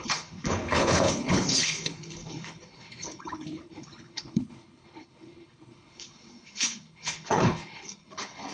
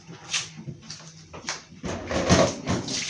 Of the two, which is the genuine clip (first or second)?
second